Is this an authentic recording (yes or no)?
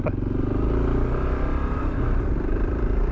yes